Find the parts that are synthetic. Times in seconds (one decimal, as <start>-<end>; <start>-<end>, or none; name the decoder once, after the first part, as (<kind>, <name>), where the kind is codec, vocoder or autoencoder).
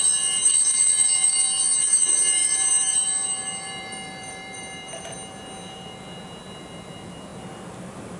2.4-5.0 (vocoder, BigVGAN v2)